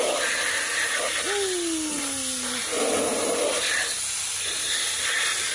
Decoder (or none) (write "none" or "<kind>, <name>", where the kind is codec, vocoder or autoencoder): none